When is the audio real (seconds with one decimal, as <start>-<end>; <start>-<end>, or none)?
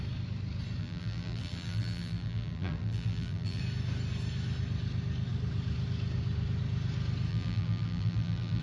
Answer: 0.0-0.8; 3.6-7.3